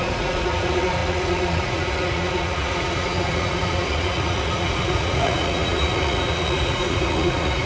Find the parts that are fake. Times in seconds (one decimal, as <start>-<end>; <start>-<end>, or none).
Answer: 0.0-7.7